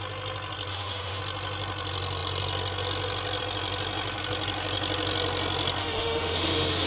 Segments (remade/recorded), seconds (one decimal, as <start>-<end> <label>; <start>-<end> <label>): 0.0-0.7 recorded; 0.7-1.2 remade; 1.2-5.8 recorded; 5.8-6.9 remade